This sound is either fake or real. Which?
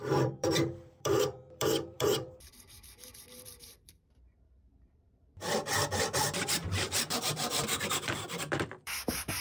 fake